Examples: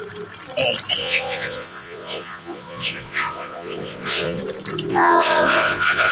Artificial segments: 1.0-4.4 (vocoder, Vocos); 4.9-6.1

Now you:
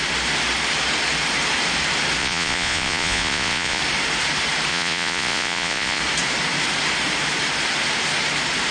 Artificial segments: 2.2-3.8 (vocoder, Vocos); 4.7-6.0

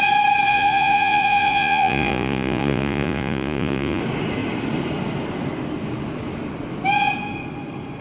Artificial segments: 0.5-4.0 (vocoder, Vocos)

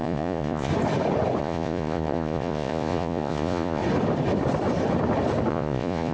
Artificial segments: 0.0-0.7 (vocoder, Vocos); 1.4-3.8; 5.5-6.1

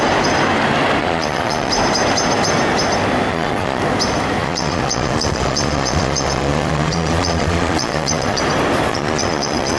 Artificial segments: 1.0-1.7 (vocoder, Vocos); 3.3-3.8; 4.4-8.4; 8.9-9.8